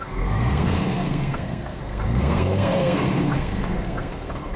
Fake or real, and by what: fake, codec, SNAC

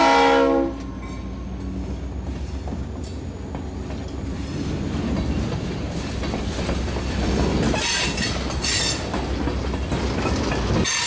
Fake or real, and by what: real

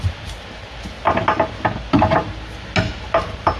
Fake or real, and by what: real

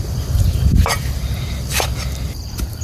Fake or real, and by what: fake, vocoder, BigVGAN v2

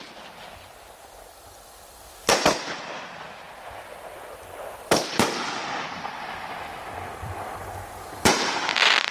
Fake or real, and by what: fake, vocoder, BigVGAN v2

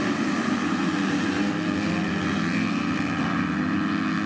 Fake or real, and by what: real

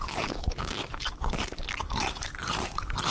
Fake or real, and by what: fake, codec, DAC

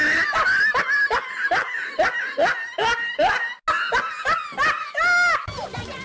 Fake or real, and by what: real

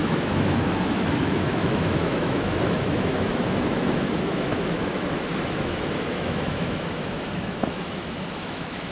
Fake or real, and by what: fake, autoencoder, DAC-VAE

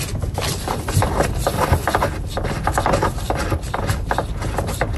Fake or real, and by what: real